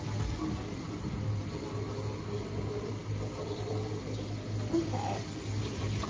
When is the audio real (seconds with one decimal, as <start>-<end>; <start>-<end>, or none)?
0.0-6.1